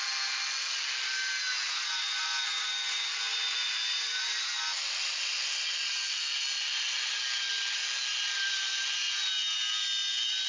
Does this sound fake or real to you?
real